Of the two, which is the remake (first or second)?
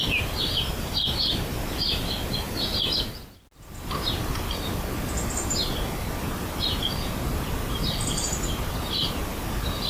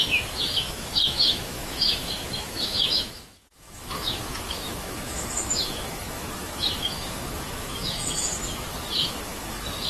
second